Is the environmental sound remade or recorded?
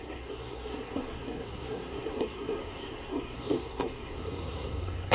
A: remade